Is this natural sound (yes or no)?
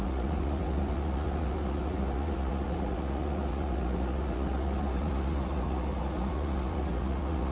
no